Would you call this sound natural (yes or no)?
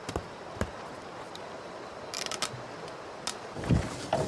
yes